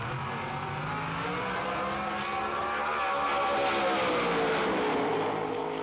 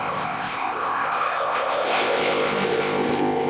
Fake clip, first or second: second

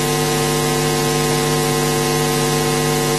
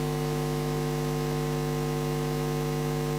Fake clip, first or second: second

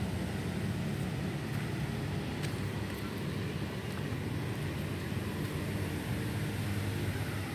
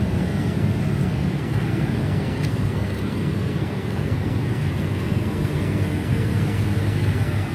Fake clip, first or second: second